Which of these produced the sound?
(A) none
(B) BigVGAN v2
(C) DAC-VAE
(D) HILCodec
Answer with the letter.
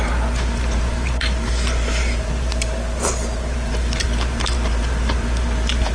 B